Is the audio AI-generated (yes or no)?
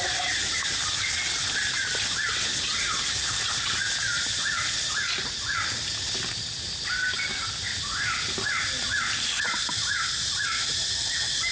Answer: no